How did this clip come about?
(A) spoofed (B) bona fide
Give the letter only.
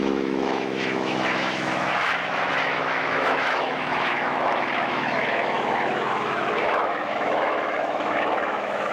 A